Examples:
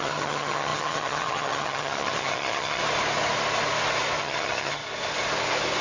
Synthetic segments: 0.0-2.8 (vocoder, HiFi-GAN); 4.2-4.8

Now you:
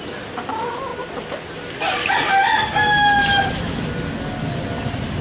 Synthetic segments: none

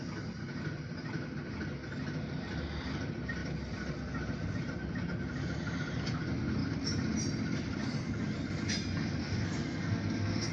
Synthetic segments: 9.2-10.5 (codec, SNAC)

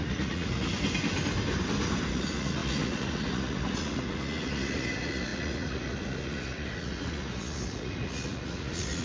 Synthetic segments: 0.0-0.7 (vocoder, Vocos); 2.1-9.0

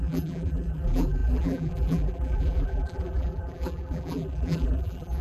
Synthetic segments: 0.0-5.2 (vocoder, BigVGAN v2)

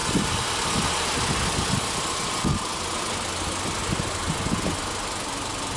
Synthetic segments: 3.8-4.3 (vocoder, BigVGAN v2)